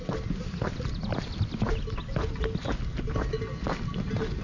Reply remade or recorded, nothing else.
recorded